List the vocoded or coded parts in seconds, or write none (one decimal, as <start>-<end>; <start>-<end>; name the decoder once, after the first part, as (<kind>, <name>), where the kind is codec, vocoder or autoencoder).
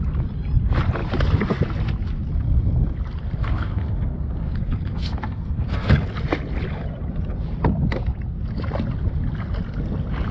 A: 3.4-5.9 (codec, SNAC)